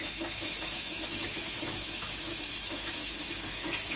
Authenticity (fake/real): fake